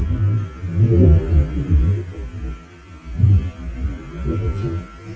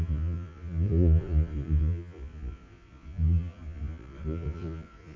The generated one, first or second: second